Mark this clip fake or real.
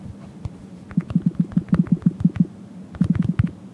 real